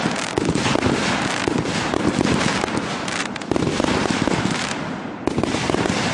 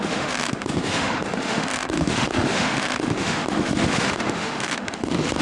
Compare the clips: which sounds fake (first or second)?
second